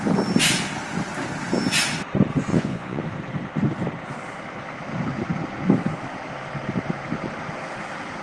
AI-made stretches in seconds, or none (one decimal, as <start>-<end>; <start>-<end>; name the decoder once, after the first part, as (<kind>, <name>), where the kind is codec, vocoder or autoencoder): 2.5-3.0 (vocoder, Vocos)

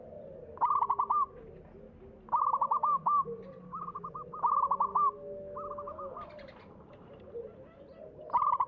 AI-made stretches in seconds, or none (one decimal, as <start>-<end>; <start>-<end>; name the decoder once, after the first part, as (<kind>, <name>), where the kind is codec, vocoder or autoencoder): none